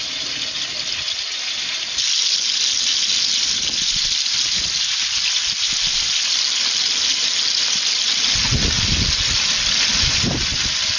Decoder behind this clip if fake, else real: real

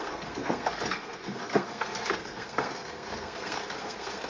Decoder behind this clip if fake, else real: fake, codec, SNAC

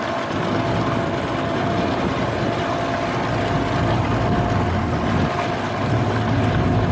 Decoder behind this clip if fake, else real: real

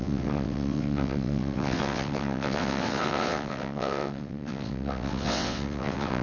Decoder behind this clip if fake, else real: fake, vocoder, WaveNeXt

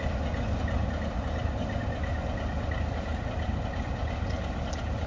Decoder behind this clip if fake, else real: real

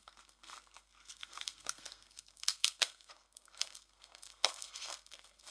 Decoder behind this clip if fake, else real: fake, codec, SNAC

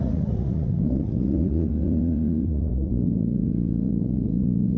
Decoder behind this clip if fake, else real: fake, vocoder, Vocos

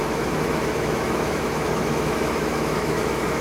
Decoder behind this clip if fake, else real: fake, autoencoder, DAC-VAE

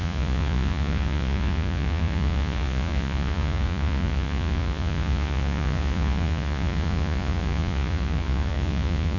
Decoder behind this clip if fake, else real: fake, vocoder, Vocos